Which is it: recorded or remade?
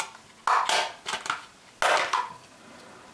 recorded